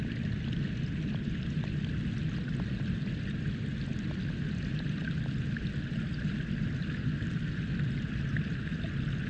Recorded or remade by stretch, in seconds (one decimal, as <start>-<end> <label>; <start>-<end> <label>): 0.0-9.3 recorded